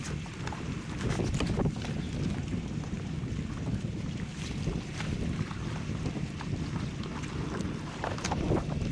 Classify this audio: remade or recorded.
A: recorded